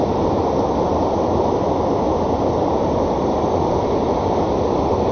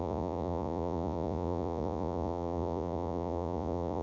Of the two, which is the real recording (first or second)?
first